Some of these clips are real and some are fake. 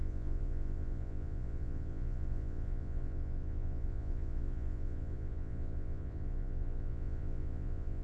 fake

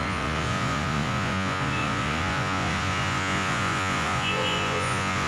fake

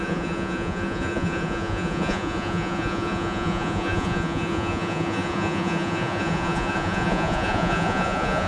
fake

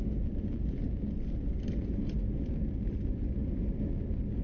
real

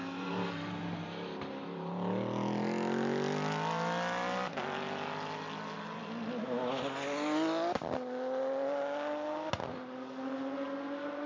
real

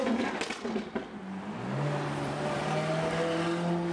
real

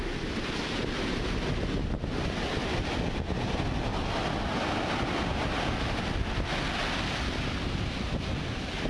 real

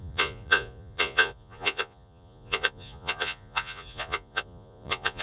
fake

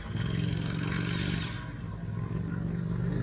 real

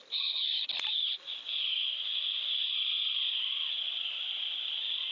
real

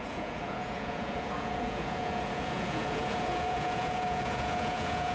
fake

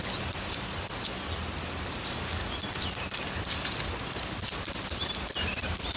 real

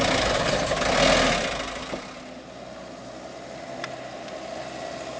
real